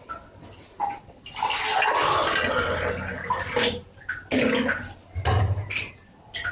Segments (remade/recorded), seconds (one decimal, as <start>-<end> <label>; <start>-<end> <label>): 0.0-6.5 recorded